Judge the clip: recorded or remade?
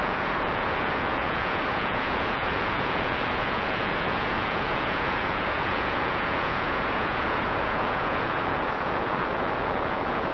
remade